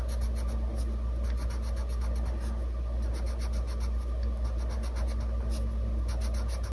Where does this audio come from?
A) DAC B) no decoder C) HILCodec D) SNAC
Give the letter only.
B